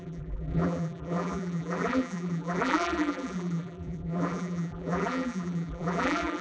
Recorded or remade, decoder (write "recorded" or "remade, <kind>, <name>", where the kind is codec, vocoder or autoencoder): remade, vocoder, BigVGAN v2